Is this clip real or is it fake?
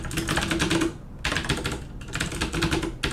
real